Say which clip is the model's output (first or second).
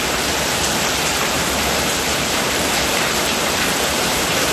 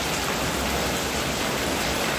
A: first